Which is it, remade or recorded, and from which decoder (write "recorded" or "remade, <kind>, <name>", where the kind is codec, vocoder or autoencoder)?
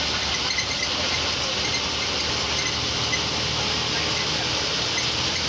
recorded